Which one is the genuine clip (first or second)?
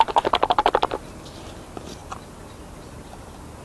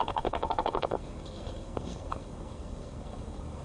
first